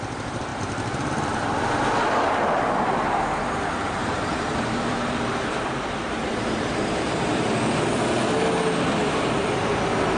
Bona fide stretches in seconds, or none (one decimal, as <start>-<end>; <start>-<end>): 0.0-4.0; 7.5-10.2